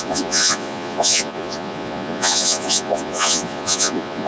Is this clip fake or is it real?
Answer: fake